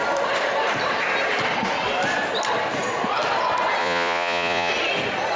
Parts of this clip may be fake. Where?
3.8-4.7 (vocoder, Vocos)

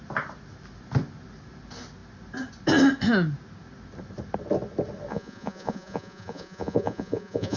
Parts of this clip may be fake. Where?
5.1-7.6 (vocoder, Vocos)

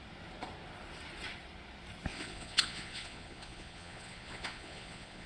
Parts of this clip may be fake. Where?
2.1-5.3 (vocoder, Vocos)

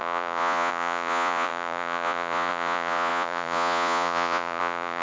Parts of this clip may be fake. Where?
0.0-5.0 (vocoder, Vocos)

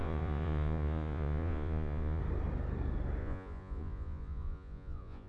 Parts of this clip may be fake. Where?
0.0-2.2 (vocoder, Vocos); 3.2-5.3

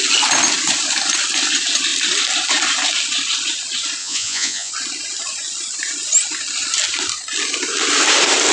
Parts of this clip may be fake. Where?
4.0-4.7 (vocoder, Vocos)

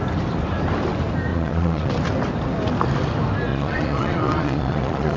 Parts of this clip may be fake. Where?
1.3-1.9 (vocoder, Vocos); 3.5-5.2

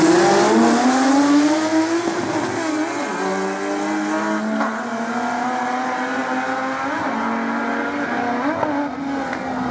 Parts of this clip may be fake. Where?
none